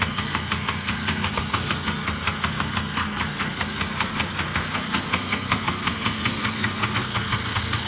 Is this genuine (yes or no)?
no